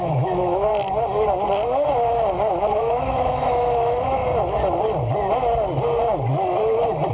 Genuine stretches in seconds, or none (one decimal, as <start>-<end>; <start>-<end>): 0.7-2.5; 4.2-7.1